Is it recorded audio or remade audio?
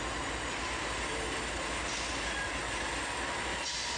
recorded